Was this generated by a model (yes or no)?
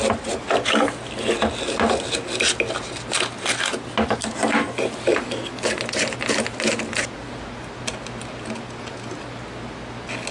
no